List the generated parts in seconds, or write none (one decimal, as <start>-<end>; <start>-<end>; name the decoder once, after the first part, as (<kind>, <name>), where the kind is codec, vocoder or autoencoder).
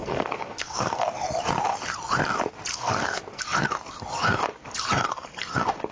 0.0-1.0 (codec, SNAC); 2.7-3.4